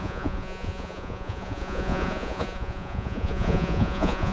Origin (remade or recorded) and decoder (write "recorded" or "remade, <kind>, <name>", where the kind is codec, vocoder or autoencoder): remade, vocoder, Vocos